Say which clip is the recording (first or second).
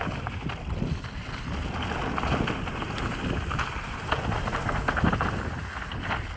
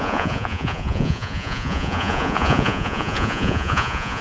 first